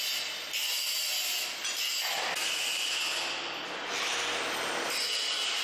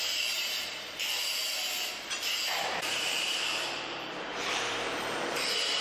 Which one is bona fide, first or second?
first